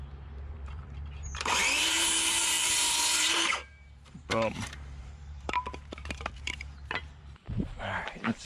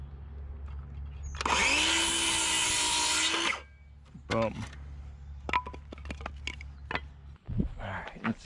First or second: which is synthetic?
first